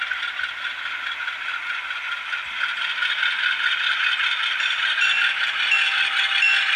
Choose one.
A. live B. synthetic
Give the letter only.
A